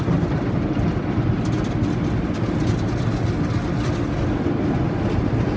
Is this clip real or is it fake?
real